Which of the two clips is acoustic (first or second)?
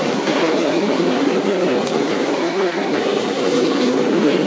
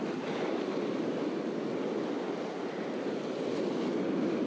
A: second